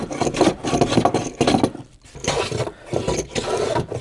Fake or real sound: real